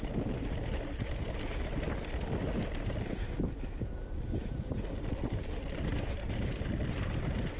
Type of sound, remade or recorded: recorded